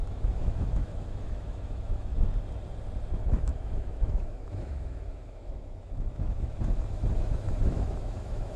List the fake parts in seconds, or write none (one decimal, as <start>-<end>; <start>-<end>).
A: 0.0-2.1; 3.1-8.6